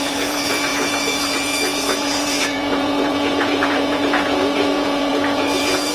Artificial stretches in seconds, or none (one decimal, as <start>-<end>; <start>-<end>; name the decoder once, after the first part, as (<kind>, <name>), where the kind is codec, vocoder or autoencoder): 0.0-5.9 (vocoder, Vocos)